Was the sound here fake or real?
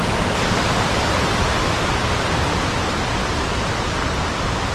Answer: real